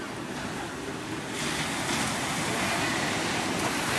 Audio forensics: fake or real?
real